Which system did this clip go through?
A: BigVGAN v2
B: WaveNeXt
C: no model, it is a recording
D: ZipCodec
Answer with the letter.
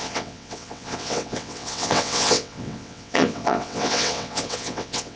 B